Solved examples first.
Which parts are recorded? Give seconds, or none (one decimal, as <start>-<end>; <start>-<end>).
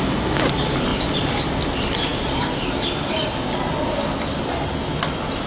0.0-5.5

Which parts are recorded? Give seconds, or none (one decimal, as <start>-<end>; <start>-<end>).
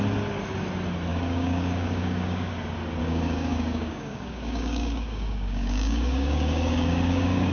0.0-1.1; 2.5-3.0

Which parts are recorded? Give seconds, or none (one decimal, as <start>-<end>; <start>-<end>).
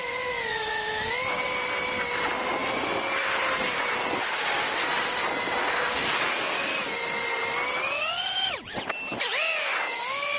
0.0-10.4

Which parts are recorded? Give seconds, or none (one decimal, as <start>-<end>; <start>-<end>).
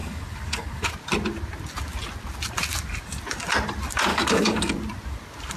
0.9-4.1; 4.7-5.6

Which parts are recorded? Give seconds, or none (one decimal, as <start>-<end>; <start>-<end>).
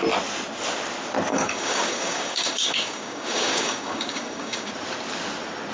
0.0-1.3; 4.7-5.7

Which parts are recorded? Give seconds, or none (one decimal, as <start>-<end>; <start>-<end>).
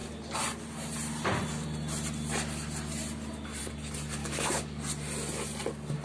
0.0-4.2; 4.8-6.0